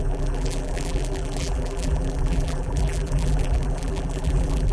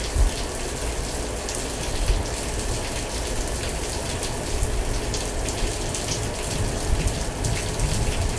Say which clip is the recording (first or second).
second